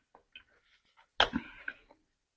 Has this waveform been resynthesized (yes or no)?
no